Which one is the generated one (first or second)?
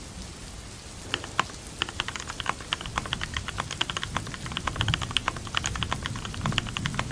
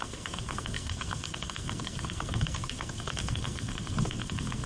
second